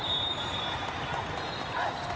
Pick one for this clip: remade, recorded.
recorded